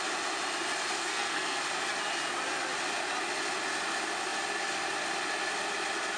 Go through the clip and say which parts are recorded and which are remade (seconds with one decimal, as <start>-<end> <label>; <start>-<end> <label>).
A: 0.0-1.0 recorded; 1.0-1.6 remade; 1.6-6.2 recorded

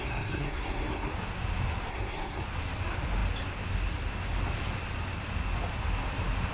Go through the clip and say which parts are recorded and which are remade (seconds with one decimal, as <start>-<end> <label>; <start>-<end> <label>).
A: 0.0-1.1 remade; 1.1-1.9 recorded; 1.9-2.4 remade; 2.4-6.5 recorded